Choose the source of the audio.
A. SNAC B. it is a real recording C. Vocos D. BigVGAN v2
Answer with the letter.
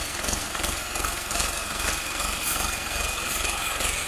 A